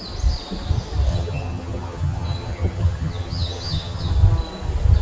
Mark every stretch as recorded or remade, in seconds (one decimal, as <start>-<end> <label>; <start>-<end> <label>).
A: 0.0-1.1 recorded; 1.1-4.1 remade; 4.1-5.0 recorded

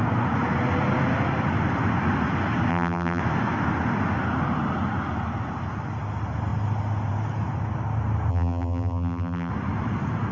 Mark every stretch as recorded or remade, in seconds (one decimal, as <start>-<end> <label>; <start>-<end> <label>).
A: 0.0-2.7 recorded; 2.7-3.2 remade; 3.2-8.3 recorded; 8.3-9.5 remade; 9.5-10.3 recorded

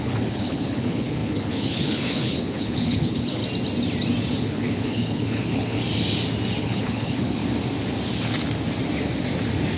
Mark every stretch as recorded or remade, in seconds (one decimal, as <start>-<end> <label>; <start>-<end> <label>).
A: 0.0-3.4 remade; 3.4-4.4 recorded; 4.4-5.8 remade; 5.8-6.6 recorded; 6.6-7.4 remade; 7.4-9.8 recorded

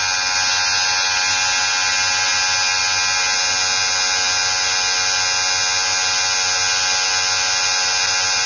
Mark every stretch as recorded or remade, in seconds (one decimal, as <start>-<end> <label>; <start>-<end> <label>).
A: 0.0-8.5 recorded